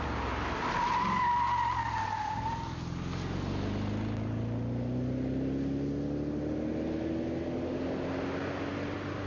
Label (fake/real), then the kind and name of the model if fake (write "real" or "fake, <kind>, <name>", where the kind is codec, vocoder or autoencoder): real